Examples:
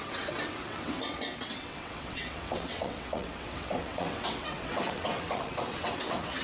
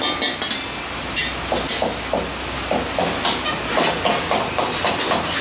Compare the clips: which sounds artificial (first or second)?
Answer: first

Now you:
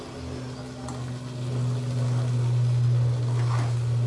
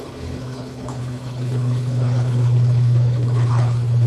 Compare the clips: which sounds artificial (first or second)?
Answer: second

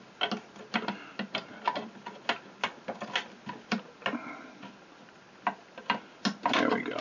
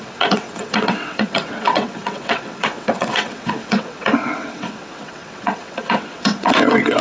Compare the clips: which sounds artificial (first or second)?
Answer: second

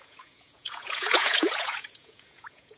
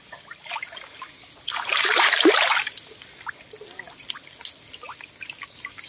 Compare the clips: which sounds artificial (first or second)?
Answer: first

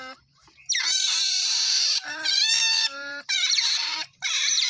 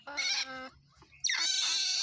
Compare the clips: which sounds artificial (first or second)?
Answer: first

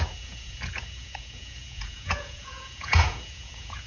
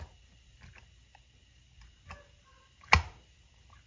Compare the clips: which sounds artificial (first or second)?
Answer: first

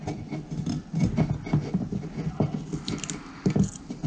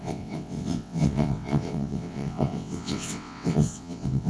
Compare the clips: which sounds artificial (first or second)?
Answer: second